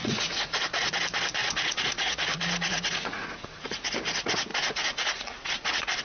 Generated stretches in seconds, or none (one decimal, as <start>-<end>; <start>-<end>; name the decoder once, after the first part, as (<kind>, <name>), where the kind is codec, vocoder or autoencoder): 0.0-0.9 (vocoder, Vocos); 1.4-3.8; 4.5-6.0